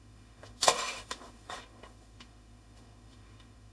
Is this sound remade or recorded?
remade